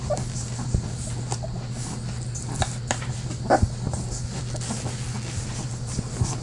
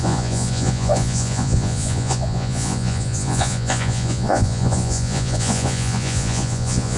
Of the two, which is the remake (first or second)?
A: second